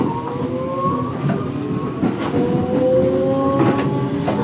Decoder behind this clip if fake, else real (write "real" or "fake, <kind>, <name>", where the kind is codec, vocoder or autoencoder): real